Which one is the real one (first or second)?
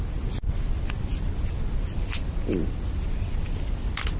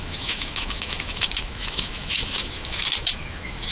first